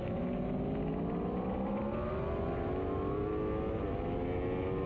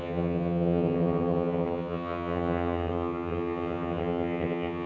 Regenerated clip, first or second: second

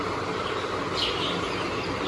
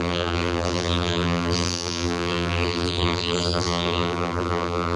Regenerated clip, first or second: second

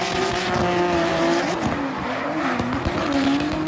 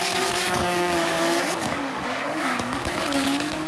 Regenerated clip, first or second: second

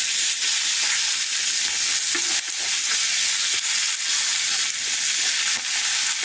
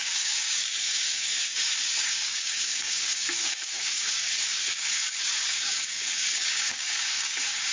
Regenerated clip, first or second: second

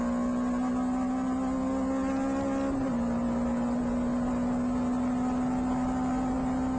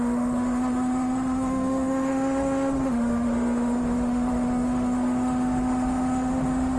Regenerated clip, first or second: second